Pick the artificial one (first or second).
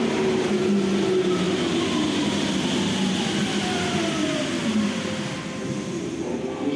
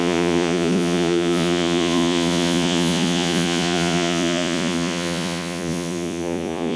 second